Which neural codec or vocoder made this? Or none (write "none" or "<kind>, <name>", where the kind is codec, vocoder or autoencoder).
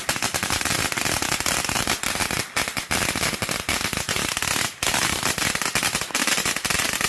vocoder, BigVGAN v2